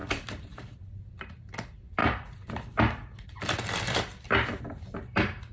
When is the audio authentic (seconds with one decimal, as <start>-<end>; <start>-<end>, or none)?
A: 1.0-2.0; 4.6-5.5